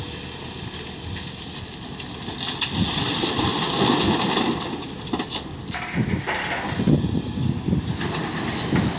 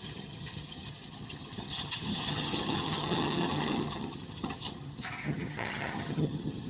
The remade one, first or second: second